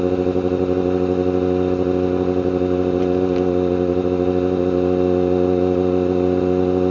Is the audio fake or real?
real